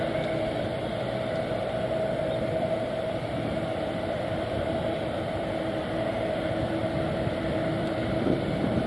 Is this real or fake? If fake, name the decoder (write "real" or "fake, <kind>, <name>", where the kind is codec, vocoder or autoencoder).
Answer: fake, vocoder, BigVGAN v2